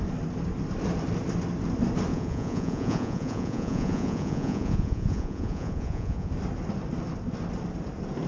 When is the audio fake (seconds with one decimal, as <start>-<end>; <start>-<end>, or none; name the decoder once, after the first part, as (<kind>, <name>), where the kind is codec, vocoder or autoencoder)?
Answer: 2.1-6.3 (vocoder, Vocos)